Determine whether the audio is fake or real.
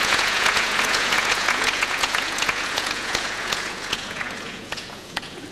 fake